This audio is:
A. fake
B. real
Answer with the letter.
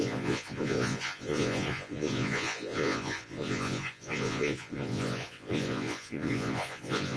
A